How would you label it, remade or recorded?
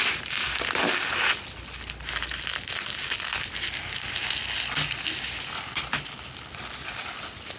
recorded